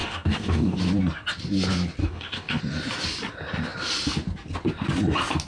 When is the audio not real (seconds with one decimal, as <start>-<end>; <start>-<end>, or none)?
0.0-0.8; 2.0-2.6